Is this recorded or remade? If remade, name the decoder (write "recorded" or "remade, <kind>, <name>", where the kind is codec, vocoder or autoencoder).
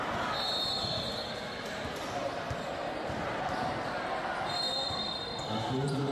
recorded